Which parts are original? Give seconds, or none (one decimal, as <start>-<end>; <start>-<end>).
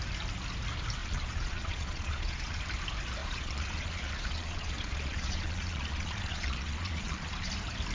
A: 0.0-1.0; 2.6-3.2; 7.5-7.9